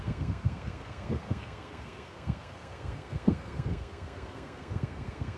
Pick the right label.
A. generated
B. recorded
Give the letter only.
A